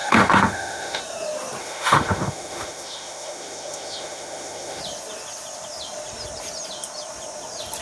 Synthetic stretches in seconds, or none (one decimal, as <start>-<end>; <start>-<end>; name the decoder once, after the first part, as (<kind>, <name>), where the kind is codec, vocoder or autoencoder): 0.0-1.0 (autoencoder, DAC-VAE); 1.6-4.8